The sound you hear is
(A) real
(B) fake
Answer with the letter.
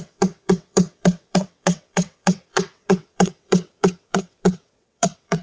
B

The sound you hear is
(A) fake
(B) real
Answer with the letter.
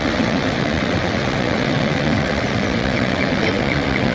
A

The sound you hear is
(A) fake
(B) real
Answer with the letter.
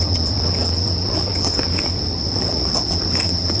A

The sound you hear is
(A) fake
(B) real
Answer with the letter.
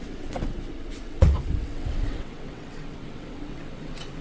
A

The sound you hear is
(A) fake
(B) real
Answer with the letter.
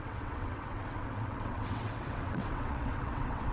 A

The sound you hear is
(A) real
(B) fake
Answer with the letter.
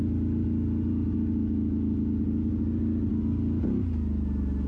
A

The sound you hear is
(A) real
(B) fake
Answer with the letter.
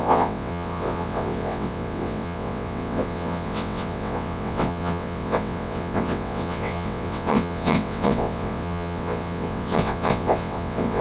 B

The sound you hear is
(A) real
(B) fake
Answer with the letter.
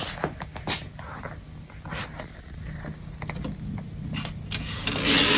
A